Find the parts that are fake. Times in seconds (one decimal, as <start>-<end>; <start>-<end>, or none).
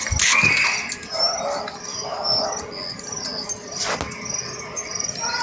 1.9-2.4